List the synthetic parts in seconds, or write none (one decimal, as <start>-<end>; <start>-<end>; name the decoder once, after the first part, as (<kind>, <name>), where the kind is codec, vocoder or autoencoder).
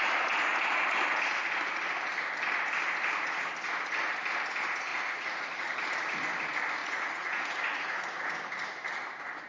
4.9-5.7 (vocoder, Vocos); 6.8-8.2